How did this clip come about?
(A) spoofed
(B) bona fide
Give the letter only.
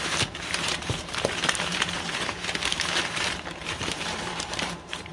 A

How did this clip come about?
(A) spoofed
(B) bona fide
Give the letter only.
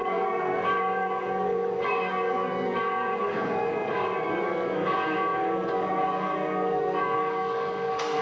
A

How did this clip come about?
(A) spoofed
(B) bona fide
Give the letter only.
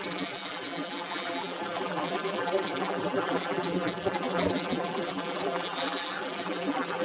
A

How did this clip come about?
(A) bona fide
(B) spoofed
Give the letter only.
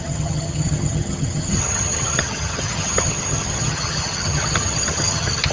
B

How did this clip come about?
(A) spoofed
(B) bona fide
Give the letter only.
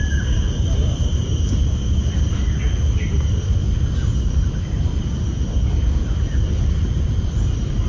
B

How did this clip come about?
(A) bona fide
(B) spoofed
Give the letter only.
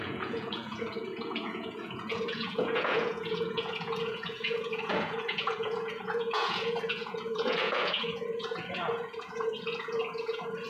B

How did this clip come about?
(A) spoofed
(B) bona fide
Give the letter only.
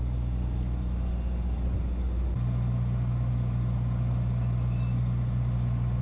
B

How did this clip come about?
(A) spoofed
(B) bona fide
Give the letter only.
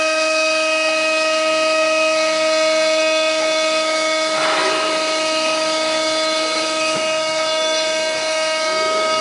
A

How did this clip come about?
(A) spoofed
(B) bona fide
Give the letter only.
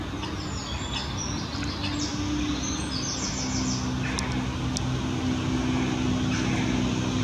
B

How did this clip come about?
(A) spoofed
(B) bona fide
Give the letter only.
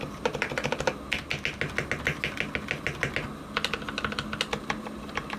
B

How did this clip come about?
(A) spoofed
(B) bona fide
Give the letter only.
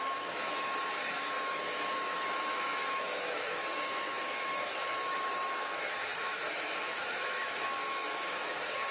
A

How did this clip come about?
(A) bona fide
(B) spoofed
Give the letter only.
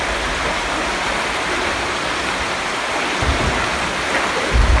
A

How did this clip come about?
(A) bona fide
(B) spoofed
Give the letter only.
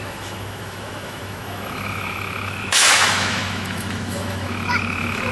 B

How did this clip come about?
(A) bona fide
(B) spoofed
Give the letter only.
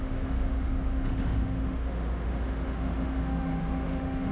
B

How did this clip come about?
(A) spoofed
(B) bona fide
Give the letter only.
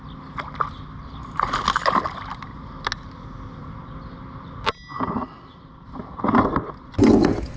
B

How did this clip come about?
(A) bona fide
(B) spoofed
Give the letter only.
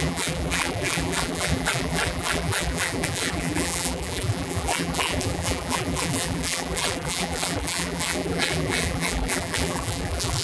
B